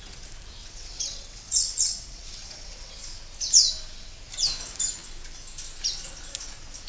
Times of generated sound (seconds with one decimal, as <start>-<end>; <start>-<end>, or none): 0.6-2.9